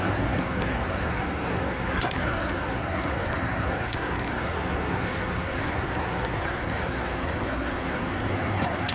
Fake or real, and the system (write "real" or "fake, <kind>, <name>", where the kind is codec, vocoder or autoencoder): fake, codec, SNAC